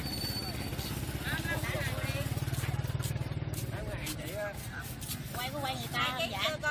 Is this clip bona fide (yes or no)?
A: yes